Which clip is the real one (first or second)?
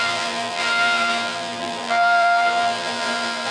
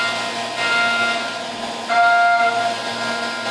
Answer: second